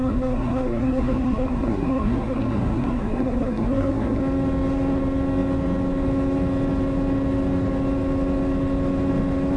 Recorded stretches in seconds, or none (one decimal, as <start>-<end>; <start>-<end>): 4.2-9.6